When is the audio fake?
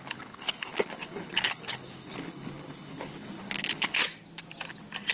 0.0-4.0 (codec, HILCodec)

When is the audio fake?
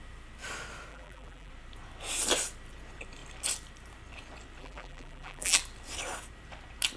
0.9-1.5 (vocoder, BigVGAN v2); 4.6-5.6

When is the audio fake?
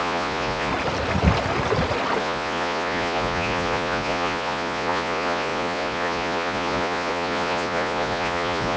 0.0-0.7 (vocoder, Vocos); 2.2-8.8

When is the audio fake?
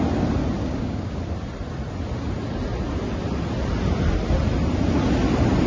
0.6-1.2 (codec, DAC)